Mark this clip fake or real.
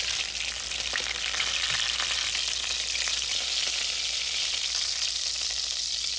real